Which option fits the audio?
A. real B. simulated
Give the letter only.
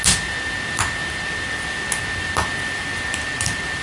A